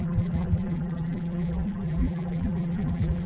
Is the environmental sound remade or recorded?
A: remade